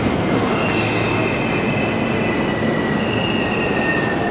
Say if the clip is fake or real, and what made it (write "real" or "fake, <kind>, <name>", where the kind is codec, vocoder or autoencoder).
real